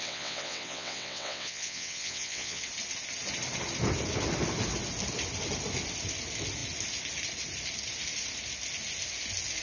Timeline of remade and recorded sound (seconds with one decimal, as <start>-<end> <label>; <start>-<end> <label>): 0.0-2.6 remade; 2.6-9.6 recorded